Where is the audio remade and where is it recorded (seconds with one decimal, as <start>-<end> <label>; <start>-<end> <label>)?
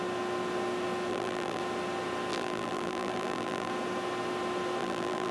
0.0-1.1 recorded; 1.1-1.6 remade; 1.6-2.3 recorded; 2.3-3.7 remade; 3.7-4.8 recorded; 4.8-5.3 remade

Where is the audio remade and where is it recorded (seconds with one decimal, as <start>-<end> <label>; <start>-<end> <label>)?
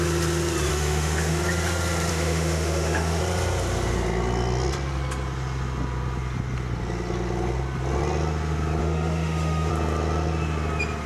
0.0-0.7 recorded; 0.7-1.4 remade; 1.4-2.1 recorded; 2.1-3.2 remade; 3.2-8.8 recorded; 8.8-9.7 remade; 9.7-11.1 recorded